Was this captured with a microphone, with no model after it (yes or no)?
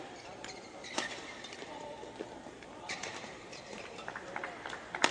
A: no